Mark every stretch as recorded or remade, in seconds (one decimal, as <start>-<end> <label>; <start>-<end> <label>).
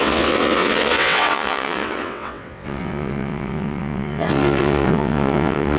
0.0-5.8 remade